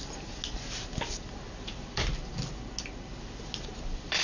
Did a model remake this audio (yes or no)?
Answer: no